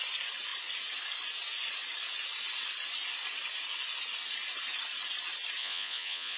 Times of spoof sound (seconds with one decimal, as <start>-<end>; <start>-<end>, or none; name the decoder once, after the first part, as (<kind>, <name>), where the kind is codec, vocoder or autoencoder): 5.6-6.4 (vocoder, Vocos)